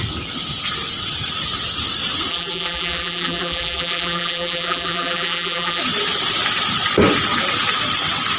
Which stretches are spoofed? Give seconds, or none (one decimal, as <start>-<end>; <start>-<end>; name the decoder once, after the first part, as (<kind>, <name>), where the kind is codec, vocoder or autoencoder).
2.3-5.8 (vocoder, BigVGAN v2)

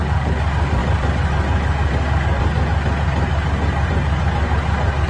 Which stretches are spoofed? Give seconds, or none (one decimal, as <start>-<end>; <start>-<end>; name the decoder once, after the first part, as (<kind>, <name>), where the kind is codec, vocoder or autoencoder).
none